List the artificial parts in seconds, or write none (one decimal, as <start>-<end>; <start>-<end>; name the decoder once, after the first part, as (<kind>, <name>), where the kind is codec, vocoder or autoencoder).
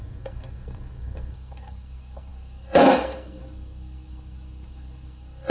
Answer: 0.0-5.5 (codec, SNAC)